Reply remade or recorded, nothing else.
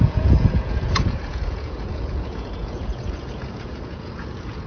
remade